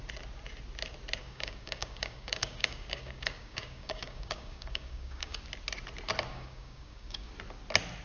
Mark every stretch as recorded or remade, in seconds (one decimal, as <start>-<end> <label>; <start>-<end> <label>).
0.0-1.2 recorded; 1.2-5.4 remade; 5.4-6.3 recorded; 6.3-7.3 remade; 7.3-8.0 recorded

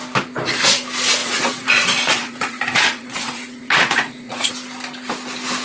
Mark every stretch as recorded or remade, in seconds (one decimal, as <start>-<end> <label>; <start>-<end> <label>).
0.0-1.2 recorded; 1.2-4.5 remade; 4.5-5.6 recorded

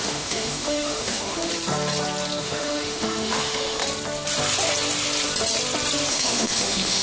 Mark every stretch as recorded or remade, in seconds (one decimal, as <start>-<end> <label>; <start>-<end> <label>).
0.0-1.5 remade; 1.5-2.4 recorded; 2.4-3.8 remade; 3.8-6.1 recorded; 6.1-7.0 remade

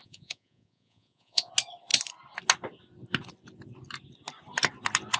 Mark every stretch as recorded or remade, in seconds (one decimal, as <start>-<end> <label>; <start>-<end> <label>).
0.0-1.5 remade; 1.5-5.2 recorded

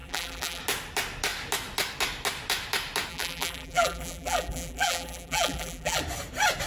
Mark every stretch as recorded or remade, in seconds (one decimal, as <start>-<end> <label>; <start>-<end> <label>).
0.0-0.6 remade; 0.6-3.1 recorded; 3.1-6.0 remade; 6.0-6.7 recorded

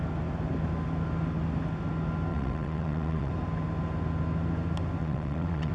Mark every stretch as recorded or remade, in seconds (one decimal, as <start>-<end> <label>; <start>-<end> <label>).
0.0-2.3 recorded; 2.3-3.3 remade; 3.3-5.0 recorded; 5.0-5.7 remade

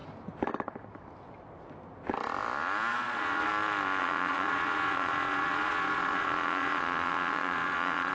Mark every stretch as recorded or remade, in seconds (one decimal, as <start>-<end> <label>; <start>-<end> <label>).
0.0-2.9 recorded; 2.9-3.5 remade; 3.5-4.0 recorded; 4.0-8.1 remade

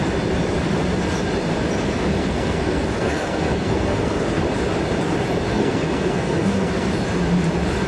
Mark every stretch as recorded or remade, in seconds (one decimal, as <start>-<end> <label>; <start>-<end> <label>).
0.0-2.2 recorded; 2.2-4.4 remade; 4.4-5.5 recorded; 5.5-6.9 remade; 6.9-7.9 recorded